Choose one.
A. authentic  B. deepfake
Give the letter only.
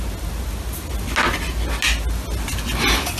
A